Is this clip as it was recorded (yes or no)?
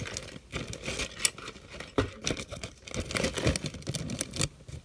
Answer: yes